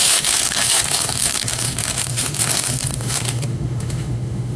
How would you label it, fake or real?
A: fake